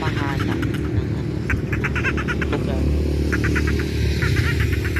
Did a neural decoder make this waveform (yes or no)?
no